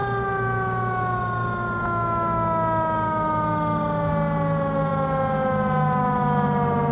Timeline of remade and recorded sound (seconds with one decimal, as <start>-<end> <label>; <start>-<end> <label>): 0.0-6.9 recorded